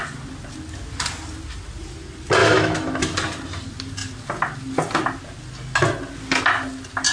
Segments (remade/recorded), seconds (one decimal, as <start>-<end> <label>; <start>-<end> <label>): 0.0-2.4 recorded; 2.4-3.0 remade; 3.0-7.1 recorded